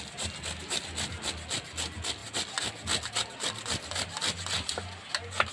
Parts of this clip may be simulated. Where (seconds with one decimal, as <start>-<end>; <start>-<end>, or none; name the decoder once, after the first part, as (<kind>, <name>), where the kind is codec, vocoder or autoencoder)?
none